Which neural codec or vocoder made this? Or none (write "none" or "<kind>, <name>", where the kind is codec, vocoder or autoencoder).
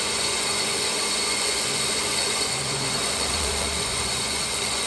vocoder, Vocos